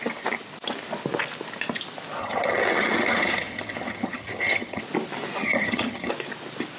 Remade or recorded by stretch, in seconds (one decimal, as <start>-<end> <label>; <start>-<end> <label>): 0.0-2.2 recorded; 2.2-4.8 remade; 4.8-5.4 recorded; 5.4-6.1 remade; 6.1-6.8 recorded